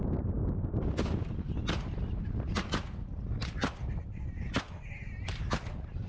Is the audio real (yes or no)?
yes